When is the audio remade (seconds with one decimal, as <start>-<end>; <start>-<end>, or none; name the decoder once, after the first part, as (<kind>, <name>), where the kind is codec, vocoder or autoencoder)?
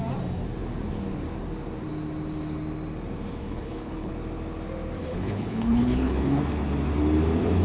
3.4-4.1 (codec, HILCodec); 5.0-6.4